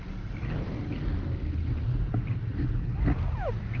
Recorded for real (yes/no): yes